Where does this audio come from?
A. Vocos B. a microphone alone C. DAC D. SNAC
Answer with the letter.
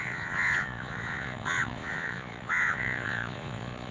A